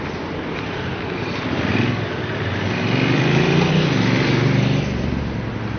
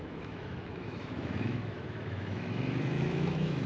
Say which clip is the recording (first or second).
first